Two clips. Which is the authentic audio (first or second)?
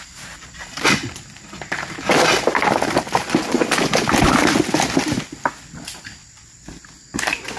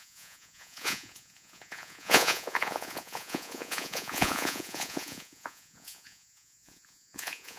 first